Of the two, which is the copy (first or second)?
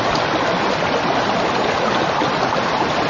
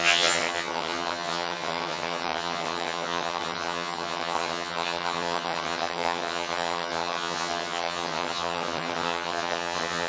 second